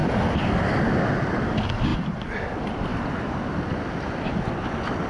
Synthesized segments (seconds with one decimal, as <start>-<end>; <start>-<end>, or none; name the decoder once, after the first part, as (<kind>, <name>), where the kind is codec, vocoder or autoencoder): none